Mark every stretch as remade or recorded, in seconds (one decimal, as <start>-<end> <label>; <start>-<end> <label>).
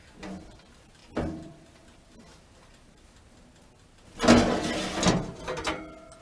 0.0-6.2 recorded